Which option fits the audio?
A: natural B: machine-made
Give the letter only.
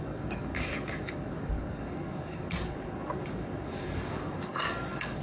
B